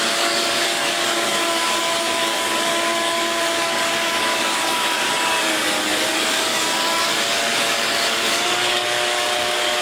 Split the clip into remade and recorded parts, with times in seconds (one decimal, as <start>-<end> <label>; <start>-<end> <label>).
0.0-9.8 remade